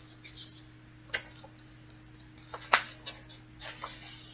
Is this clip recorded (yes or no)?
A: yes